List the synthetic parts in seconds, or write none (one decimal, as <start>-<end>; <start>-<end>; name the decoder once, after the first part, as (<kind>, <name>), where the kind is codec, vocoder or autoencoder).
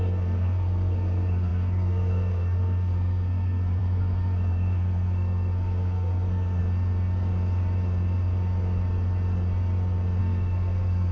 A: 0.0-6.6 (codec, SNAC); 10.2-11.1